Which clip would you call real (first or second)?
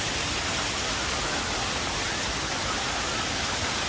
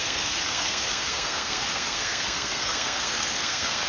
first